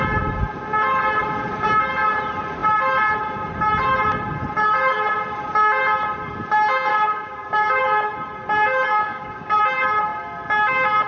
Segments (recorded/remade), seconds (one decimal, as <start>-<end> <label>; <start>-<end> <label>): 0.0-6.9 recorded; 6.9-7.8 remade; 7.8-8.9 recorded; 8.9-9.6 remade; 9.6-11.1 recorded